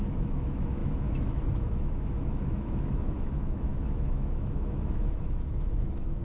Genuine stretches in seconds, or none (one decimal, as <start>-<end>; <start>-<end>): none